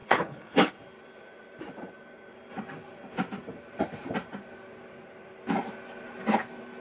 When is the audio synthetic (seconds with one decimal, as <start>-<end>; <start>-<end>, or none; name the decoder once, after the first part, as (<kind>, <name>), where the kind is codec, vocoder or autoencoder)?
0.0-0.7 (codec, HILCodec)

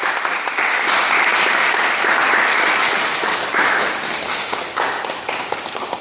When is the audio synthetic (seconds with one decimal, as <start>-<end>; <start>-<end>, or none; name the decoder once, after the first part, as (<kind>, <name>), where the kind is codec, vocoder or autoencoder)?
none